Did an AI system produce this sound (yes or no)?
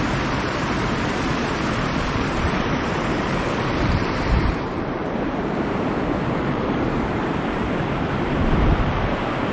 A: yes